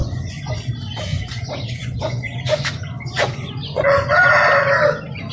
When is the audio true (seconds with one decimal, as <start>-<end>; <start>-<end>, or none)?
0.5-1.1; 4.3-5.3

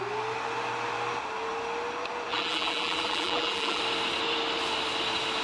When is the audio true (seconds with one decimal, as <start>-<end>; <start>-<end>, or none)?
0.0-2.3; 3.8-5.4